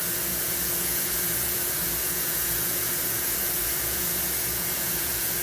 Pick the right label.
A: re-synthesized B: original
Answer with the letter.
A